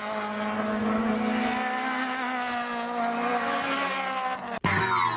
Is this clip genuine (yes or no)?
yes